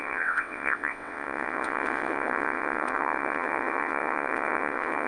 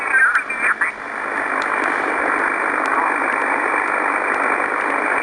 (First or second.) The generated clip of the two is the first